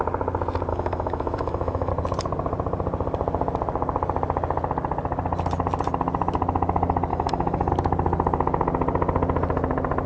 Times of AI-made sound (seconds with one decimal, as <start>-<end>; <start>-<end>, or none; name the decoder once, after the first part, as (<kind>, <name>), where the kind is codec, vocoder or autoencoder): 0.7-1.9 (autoencoder, DAC-VAE); 7.1-7.7

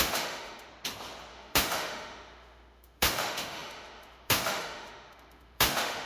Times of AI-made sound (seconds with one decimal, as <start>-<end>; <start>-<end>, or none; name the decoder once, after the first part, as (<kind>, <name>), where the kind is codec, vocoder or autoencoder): 0.0-0.7 (autoencoder, DAC-VAE); 1.3-6.1

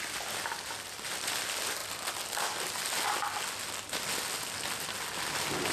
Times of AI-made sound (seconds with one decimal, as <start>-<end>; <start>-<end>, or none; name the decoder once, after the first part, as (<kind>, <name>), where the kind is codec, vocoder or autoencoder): none

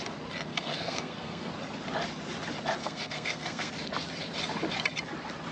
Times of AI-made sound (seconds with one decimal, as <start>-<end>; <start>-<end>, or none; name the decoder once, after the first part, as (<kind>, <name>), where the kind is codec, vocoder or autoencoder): 0.5-1.5 (codec, SNAC); 2.8-3.7